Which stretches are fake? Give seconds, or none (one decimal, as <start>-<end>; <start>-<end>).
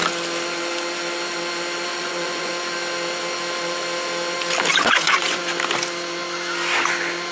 1.9-2.5; 4.7-5.4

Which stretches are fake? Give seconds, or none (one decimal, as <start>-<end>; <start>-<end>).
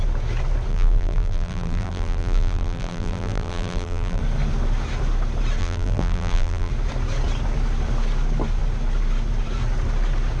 0.7-4.2; 5.6-6.7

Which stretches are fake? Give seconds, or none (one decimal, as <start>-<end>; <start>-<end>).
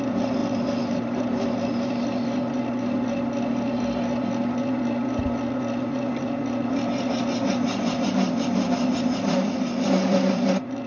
none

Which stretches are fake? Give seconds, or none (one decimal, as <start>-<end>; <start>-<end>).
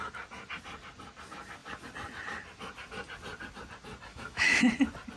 4.1-4.6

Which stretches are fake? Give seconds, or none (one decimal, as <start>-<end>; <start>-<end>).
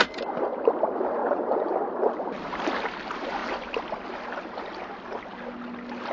1.2-1.8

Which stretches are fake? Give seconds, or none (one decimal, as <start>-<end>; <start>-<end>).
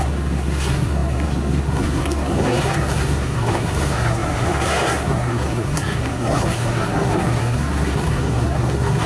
0.0-9.1